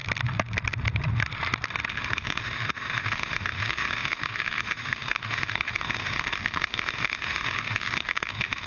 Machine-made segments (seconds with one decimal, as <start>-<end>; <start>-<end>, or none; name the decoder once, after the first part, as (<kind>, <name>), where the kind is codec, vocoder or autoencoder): 1.9-8.7 (autoencoder, DAC-VAE)